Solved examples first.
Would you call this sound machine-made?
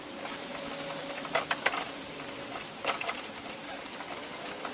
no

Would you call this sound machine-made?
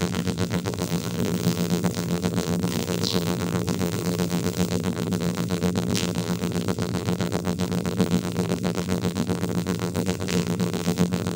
yes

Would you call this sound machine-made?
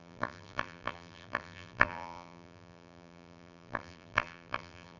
yes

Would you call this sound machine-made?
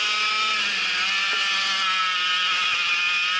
no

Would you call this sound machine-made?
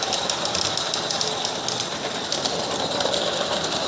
no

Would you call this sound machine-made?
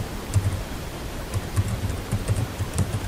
yes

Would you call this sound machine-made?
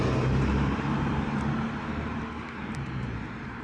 yes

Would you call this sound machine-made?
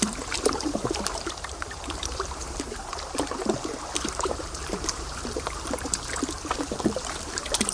yes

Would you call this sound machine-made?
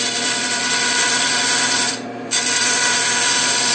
yes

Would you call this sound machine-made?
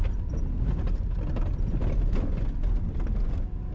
no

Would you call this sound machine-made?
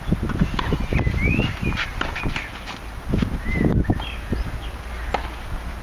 no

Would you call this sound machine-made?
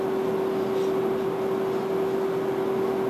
no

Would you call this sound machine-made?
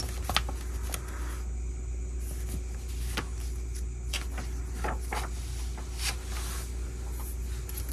no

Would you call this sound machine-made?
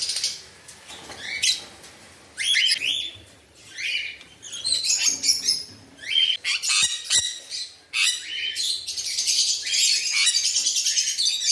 no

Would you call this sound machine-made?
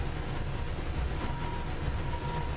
no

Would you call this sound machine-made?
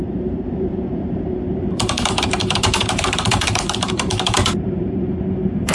yes